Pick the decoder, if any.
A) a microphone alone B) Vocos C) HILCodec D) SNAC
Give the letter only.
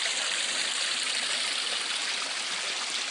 A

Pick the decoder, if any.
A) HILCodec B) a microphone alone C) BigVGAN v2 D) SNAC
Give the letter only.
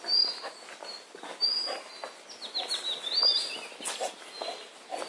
B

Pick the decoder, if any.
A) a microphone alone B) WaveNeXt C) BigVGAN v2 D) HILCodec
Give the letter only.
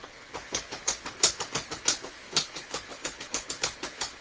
D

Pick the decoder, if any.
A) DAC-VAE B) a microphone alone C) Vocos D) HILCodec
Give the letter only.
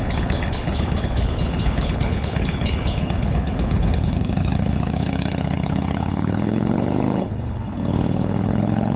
D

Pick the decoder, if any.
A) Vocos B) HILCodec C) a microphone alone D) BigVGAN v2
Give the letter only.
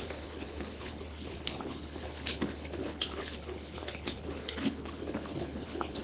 B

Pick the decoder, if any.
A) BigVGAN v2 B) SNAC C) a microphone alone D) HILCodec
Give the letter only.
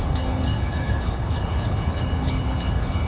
D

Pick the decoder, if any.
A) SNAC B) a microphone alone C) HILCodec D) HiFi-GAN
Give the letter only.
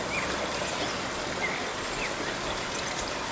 B